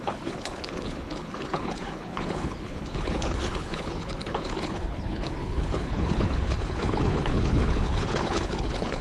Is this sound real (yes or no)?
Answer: no